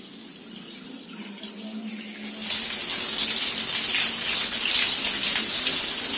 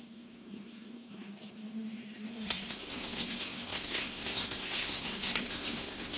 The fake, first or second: second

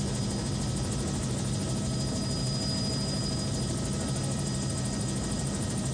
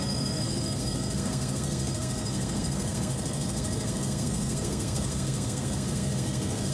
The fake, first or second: second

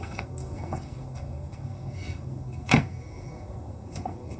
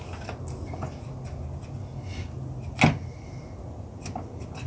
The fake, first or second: first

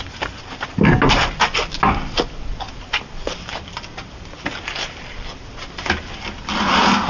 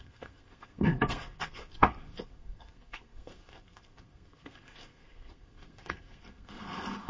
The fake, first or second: second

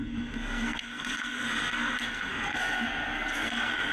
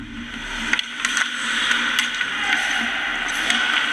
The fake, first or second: first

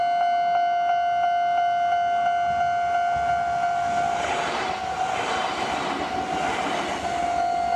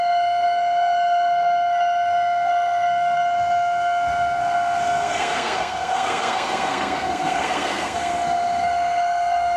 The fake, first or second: second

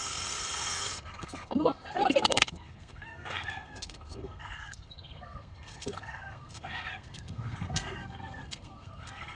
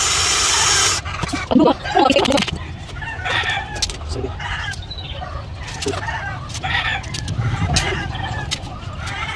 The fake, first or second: first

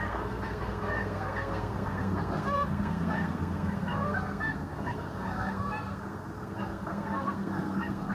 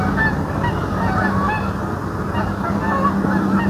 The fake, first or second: first